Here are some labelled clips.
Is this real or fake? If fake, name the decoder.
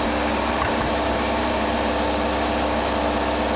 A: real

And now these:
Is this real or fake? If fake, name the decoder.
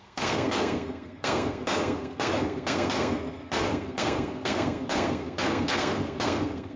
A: fake, codec, SNAC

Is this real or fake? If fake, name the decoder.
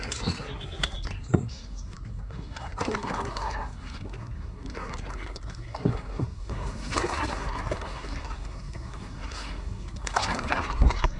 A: fake, codec, SNAC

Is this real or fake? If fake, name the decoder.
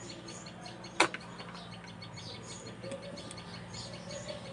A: real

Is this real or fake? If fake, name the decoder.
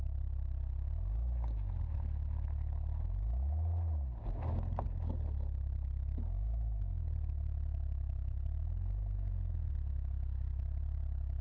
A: real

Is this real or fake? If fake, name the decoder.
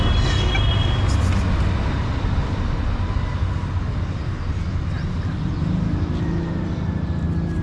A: real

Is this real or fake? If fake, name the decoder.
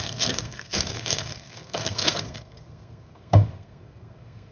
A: fake, codec, SNAC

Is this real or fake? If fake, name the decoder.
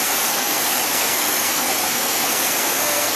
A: fake, codec, SNAC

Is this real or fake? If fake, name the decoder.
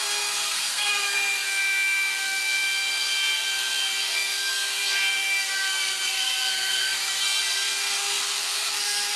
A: fake, codec, SNAC